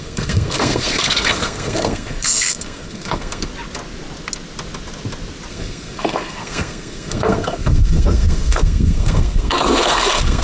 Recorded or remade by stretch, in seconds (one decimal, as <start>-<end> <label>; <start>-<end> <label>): 0.0-3.5 remade; 3.5-5.5 recorded; 5.5-10.4 remade